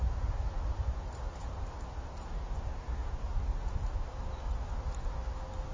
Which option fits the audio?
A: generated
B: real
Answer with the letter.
B